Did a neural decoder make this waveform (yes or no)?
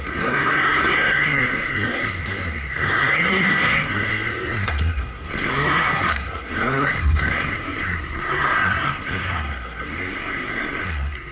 yes